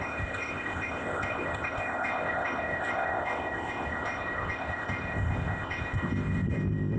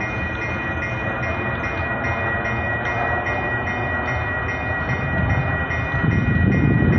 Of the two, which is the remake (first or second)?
first